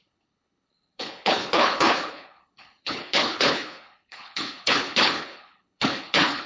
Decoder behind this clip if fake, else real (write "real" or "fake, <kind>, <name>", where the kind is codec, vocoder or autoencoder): fake, codec, HILCodec